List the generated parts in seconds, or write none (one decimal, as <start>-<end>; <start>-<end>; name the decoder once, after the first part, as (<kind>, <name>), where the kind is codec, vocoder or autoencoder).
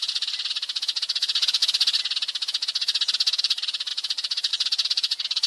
0.0-1.6 (vocoder, BigVGAN v2); 3.4-5.5